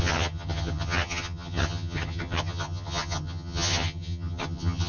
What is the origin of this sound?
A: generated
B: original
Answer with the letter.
A